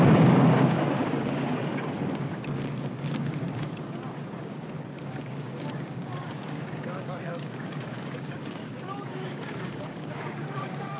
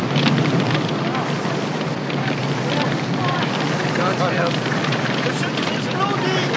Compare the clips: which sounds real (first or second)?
second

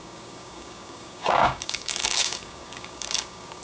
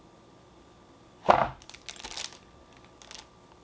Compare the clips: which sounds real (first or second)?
second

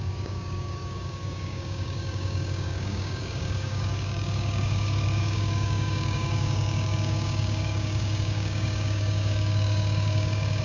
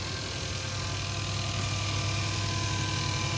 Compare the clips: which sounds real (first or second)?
second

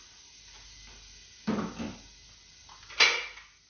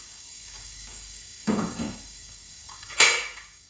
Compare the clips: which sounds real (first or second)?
first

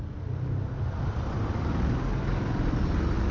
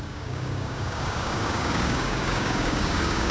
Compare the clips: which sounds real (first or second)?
first